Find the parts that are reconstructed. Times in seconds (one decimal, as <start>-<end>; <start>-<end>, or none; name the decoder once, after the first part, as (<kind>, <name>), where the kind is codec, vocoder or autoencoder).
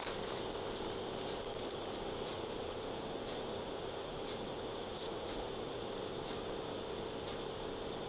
1.4-5.8 (vocoder, Vocos)